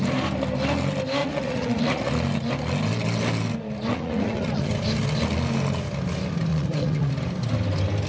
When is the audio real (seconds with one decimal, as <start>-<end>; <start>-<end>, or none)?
0.0-1.2; 2.1-3.9; 4.7-6.5; 7.1-8.1